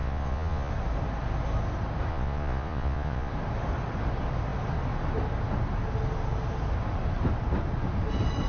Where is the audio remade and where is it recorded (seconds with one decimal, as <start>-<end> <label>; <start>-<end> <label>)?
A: 0.0-0.7 remade; 0.7-2.1 recorded; 2.1-3.3 remade; 3.3-8.5 recorded